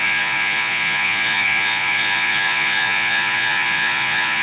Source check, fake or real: fake